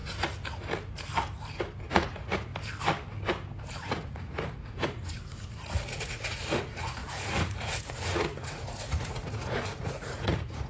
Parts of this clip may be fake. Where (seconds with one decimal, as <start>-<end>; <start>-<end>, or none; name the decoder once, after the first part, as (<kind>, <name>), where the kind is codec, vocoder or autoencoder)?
1.9-2.5 (vocoder, Vocos); 3.8-10.7